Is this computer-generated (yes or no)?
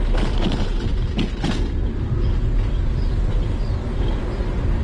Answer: no